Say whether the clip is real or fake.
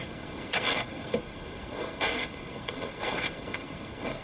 fake